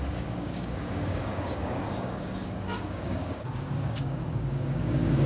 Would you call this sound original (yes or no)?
no